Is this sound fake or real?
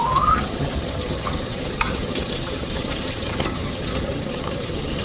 fake